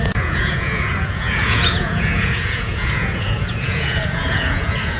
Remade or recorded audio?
remade